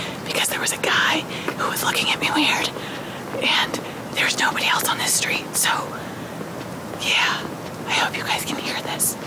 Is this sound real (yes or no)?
yes